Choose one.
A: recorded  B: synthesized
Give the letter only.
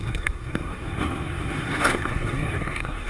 B